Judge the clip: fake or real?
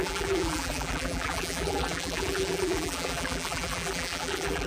fake